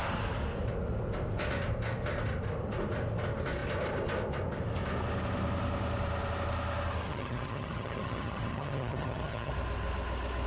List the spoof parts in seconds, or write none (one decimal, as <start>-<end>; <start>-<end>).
7.1-9.5

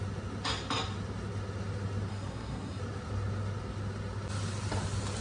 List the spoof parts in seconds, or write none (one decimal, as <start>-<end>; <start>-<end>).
2.1-2.8

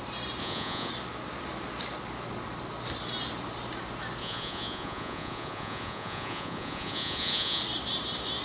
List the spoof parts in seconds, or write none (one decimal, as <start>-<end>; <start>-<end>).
0.4-0.9; 4.2-7.6

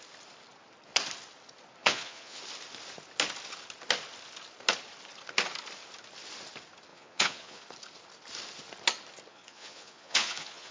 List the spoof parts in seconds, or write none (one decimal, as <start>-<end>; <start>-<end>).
1.8-2.4; 6.9-7.6; 9.3-10.7

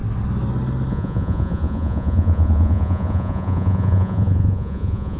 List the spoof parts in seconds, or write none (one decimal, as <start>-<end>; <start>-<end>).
0.9-5.2

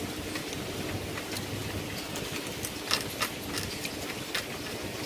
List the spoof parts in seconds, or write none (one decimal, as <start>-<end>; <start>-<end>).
none

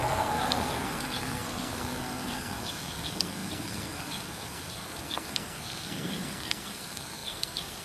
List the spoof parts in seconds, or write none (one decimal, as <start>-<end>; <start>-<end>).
0.0-7.8

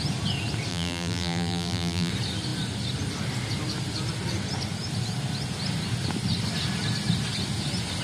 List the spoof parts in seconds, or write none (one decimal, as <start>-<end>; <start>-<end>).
0.7-2.1